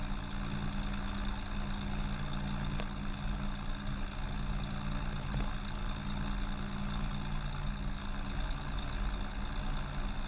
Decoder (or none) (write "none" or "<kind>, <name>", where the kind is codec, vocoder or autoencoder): none